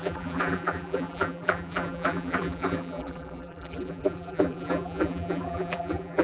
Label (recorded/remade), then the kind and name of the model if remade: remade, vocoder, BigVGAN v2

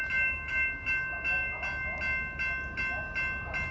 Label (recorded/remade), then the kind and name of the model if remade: recorded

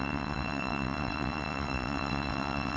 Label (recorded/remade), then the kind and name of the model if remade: remade, vocoder, WaveNeXt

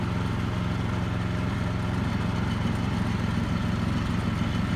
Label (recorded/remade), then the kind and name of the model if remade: recorded